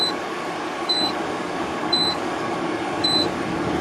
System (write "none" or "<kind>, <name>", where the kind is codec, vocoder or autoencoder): codec, DAC